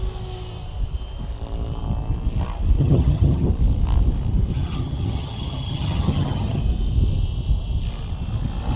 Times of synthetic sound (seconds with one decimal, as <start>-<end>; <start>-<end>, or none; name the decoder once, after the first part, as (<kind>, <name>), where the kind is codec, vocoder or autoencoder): 2.8-3.5 (vocoder, HiFi-GAN); 4.5-6.6